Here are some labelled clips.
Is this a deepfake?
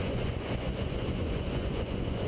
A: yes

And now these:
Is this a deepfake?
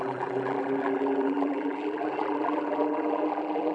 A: yes